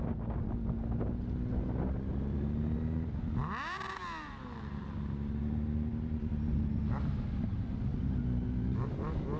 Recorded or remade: recorded